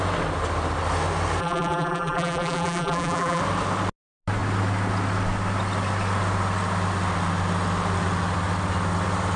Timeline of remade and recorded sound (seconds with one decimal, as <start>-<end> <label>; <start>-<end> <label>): 0.0-1.4 recorded; 1.4-3.4 remade; 3.4-9.4 recorded